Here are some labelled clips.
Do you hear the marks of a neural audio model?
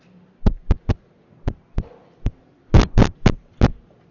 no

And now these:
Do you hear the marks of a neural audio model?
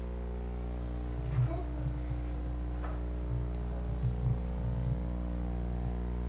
no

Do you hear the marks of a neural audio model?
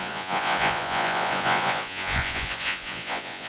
yes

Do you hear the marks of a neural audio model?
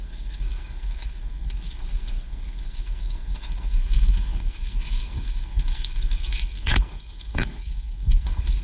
yes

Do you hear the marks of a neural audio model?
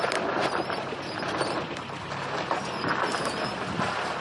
no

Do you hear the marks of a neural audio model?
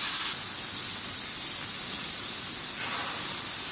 no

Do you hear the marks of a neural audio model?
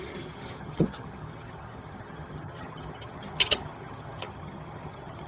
yes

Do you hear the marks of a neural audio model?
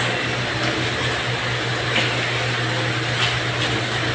no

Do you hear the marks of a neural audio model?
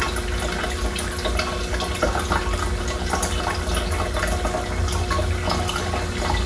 no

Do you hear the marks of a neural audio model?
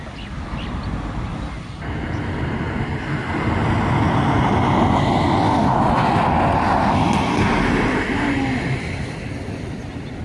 no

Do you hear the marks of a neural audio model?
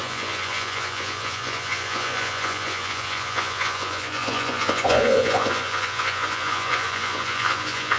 yes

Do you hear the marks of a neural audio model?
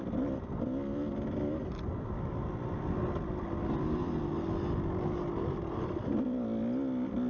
no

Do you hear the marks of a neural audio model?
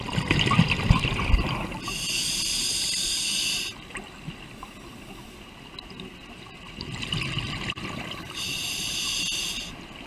no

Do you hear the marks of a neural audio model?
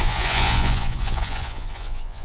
yes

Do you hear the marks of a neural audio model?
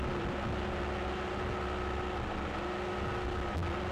no